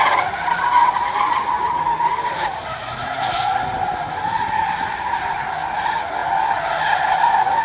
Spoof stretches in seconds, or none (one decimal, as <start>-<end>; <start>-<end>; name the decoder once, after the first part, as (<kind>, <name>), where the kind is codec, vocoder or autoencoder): none